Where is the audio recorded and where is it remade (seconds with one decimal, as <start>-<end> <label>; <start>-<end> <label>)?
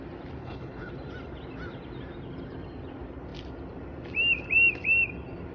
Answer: 0.0-0.4 recorded; 0.4-0.9 remade; 0.9-5.5 recorded